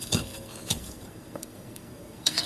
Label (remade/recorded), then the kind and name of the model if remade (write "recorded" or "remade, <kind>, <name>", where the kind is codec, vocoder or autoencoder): remade, codec, SNAC